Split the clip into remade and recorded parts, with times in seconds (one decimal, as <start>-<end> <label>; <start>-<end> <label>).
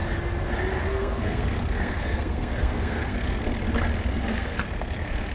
0.0-0.8 recorded; 0.8-3.4 remade; 3.4-4.1 recorded; 4.1-5.3 remade